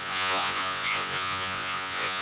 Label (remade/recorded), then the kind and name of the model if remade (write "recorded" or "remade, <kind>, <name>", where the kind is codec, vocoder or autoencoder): remade, vocoder, Vocos